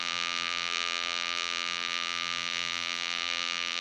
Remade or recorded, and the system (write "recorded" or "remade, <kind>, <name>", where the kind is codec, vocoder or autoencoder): remade, vocoder, BigVGAN v2